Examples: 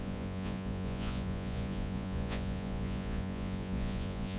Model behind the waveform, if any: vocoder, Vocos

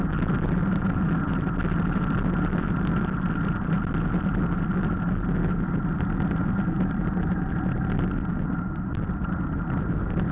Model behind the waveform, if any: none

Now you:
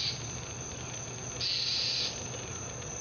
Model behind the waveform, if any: none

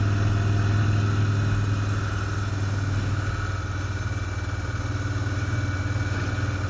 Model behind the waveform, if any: none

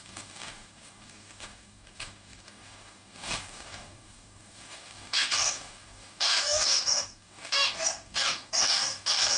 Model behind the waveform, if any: codec, DAC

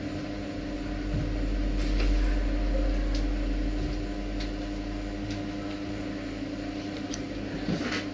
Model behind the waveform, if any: none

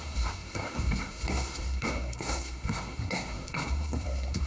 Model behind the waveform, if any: codec, SNAC